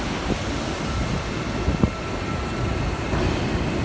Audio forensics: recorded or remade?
recorded